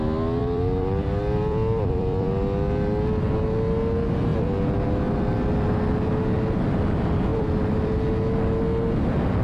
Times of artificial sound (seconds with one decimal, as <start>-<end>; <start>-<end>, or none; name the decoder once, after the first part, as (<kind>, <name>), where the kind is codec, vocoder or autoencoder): 0.4-2.3 (vocoder, BigVGAN v2); 7.3-7.9